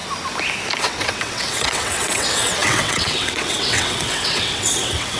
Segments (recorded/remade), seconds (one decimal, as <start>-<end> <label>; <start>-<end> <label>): 0.0-0.8 recorded; 0.8-5.2 remade